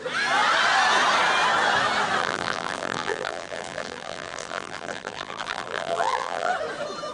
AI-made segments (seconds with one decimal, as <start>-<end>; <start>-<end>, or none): 2.2-6.5